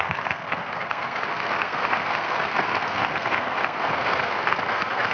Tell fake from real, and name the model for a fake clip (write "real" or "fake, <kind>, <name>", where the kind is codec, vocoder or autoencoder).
fake, codec, SNAC